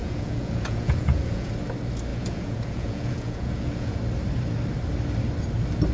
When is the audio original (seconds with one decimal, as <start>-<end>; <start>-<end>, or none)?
1.5-2.1; 4.0-5.9